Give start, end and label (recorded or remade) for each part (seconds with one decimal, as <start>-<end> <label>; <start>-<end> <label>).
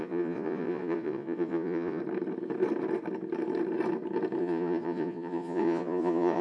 0.0-2.0 remade; 2.0-4.4 recorded; 4.4-6.4 remade